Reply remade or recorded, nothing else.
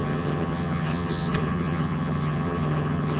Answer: remade